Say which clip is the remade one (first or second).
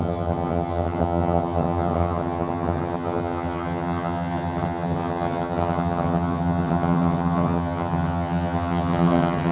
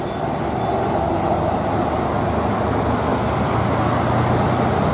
first